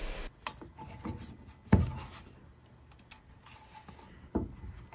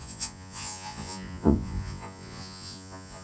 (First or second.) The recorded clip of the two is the first